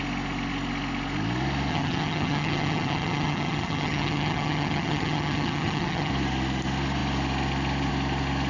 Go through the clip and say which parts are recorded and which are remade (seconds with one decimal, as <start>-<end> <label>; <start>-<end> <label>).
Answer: 0.0-1.7 recorded; 1.7-6.1 remade; 6.1-8.5 recorded